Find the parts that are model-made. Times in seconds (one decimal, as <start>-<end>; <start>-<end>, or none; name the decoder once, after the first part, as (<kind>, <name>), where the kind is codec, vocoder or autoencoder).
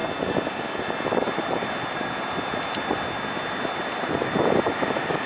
none